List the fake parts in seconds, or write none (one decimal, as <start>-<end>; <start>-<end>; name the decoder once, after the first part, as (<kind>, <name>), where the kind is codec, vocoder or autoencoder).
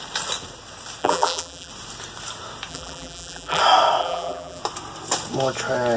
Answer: 1.0-1.7 (vocoder, BigVGAN v2); 2.7-3.6; 4.0-4.6